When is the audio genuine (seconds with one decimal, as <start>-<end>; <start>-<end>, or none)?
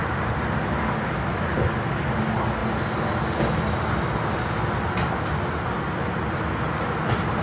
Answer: 0.0-7.4